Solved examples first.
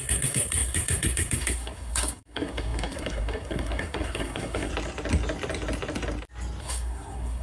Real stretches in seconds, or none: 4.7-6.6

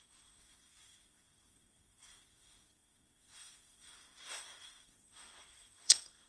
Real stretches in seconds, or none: none

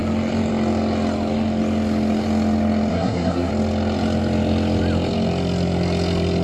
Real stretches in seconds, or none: 0.0-2.9; 3.5-6.4